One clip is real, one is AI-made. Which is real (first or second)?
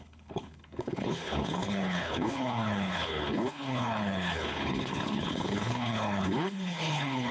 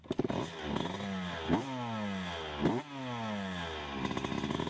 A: second